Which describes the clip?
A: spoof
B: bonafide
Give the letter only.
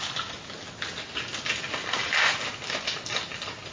B